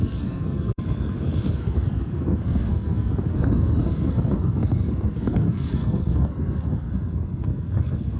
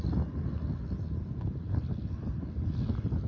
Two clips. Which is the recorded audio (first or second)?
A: second